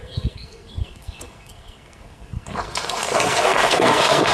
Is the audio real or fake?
fake